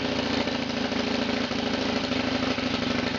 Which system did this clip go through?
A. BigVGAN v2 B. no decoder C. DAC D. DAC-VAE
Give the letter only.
B